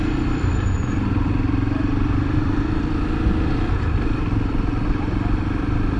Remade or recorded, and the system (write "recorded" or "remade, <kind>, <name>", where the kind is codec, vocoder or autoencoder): remade, vocoder, BigVGAN v2